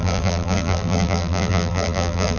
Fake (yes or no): yes